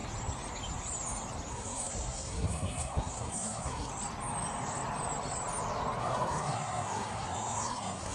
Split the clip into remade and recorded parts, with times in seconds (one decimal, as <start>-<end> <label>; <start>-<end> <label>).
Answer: 0.0-1.5 recorded; 1.5-3.9 remade; 3.9-6.0 recorded; 6.0-8.1 remade